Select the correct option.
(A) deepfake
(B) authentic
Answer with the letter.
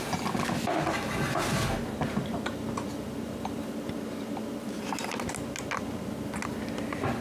B